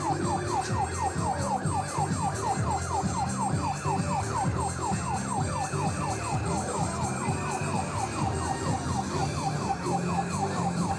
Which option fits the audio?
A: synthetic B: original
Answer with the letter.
B